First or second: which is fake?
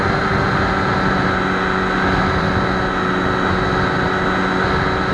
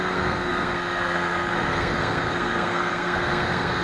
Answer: second